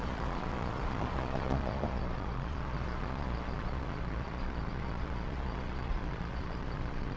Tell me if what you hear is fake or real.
fake